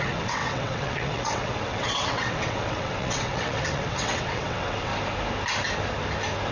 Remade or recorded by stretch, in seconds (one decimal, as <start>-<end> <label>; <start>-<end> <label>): 0.0-4.9 remade; 4.9-6.5 recorded